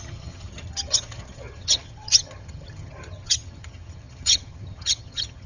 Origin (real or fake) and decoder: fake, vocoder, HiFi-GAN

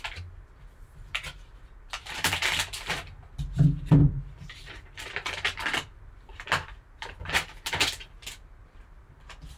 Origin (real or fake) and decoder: fake, vocoder, BigVGAN v2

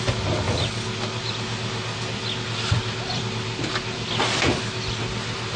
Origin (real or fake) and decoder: real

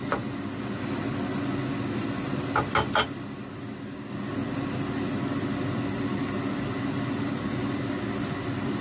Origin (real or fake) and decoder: real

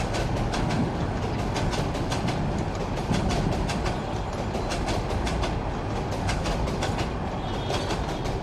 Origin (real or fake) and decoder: real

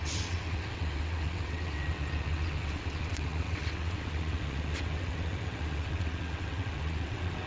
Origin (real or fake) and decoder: fake, vocoder, WaveNeXt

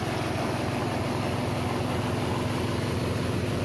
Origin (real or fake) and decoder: real